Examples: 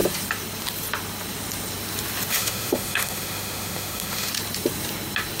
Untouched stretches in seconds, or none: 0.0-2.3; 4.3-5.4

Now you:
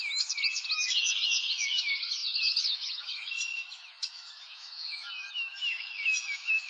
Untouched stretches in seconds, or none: none

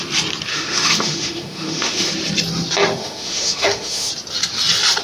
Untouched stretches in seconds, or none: 0.0-0.5; 2.1-3.0; 4.1-5.0